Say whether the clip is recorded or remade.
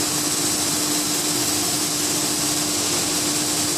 recorded